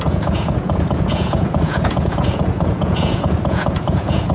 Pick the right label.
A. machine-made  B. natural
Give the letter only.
A